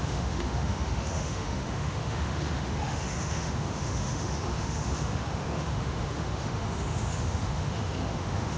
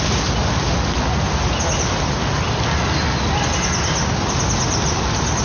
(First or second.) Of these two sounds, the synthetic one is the first